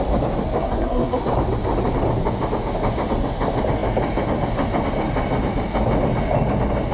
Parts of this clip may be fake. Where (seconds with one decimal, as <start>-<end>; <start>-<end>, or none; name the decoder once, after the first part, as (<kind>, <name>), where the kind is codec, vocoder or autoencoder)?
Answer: 0.6-1.2 (codec, SNAC)